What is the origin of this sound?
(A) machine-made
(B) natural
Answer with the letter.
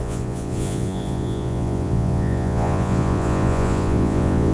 A